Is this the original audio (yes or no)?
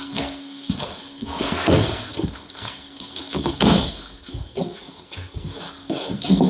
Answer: no